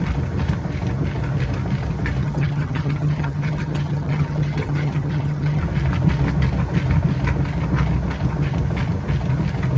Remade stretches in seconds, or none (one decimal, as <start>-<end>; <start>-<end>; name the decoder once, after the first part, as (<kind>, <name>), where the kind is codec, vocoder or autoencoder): 2.2-5.6 (vocoder, HiFi-GAN)